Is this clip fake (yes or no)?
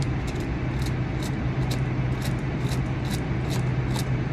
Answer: no